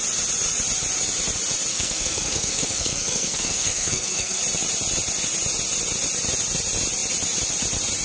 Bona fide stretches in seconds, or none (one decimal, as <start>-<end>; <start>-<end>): 0.0-1.7; 4.4-8.0